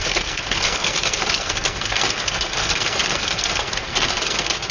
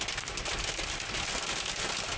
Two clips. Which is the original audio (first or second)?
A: second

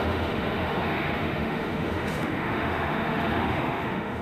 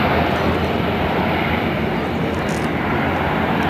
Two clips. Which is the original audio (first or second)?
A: second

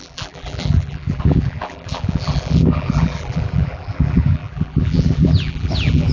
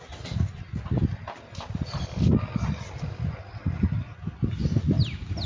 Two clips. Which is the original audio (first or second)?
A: second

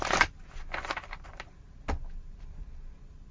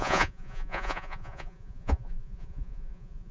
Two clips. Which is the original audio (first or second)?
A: first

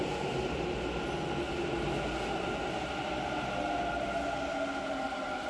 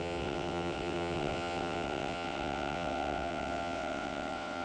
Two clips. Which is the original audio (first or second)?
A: first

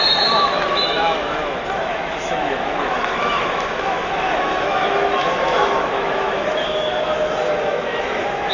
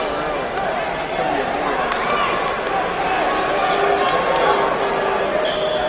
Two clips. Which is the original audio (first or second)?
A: second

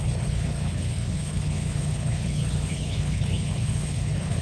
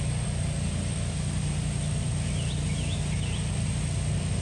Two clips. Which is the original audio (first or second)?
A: second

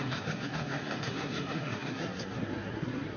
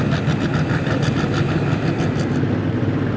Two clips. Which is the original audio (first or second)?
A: second